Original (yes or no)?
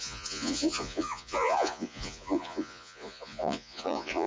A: no